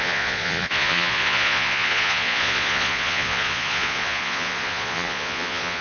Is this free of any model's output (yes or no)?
no